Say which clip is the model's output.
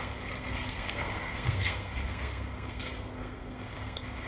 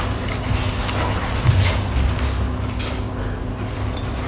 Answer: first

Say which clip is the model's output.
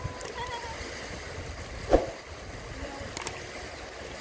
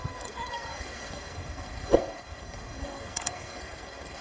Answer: second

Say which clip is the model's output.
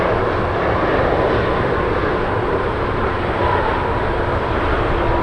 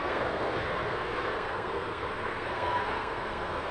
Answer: second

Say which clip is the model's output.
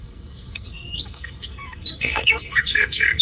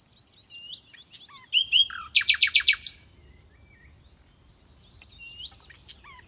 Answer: first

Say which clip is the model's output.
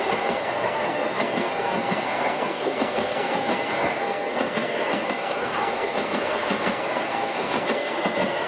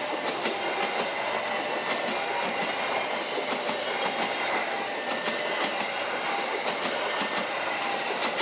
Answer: first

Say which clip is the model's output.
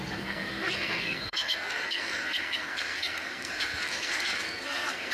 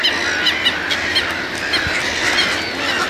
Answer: first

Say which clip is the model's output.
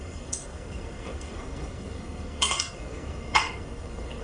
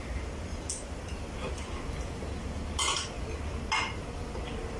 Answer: first